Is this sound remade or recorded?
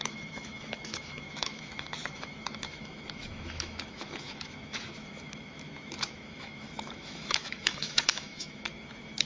remade